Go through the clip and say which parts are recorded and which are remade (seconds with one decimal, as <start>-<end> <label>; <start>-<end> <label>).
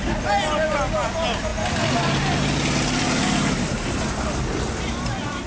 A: 0.0-5.5 recorded